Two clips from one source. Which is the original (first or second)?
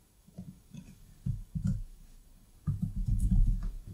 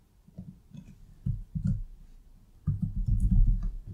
second